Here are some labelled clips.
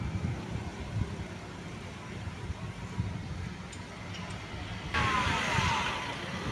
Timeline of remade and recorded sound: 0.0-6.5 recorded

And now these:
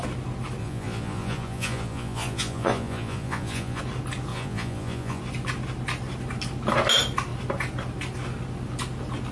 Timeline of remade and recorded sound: 0.0-0.6 recorded; 0.6-3.8 remade; 3.8-4.3 recorded; 4.3-5.2 remade; 5.2-9.3 recorded

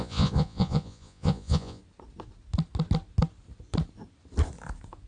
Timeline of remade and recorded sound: 0.0-1.8 remade; 1.8-5.1 recorded